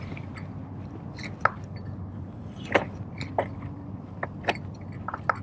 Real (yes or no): yes